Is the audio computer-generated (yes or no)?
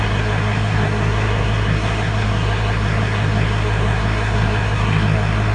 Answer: yes